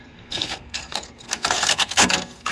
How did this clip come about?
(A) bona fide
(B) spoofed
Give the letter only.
B